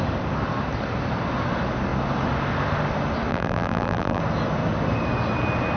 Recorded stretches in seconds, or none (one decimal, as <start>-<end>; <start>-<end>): 0.0-3.3; 4.2-5.8